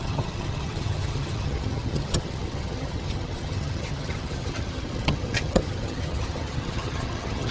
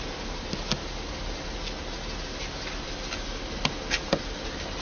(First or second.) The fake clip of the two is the first